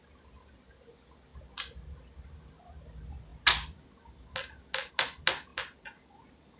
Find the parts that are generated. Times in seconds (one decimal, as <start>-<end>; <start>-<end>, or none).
none